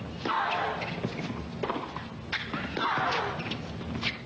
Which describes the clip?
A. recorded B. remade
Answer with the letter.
A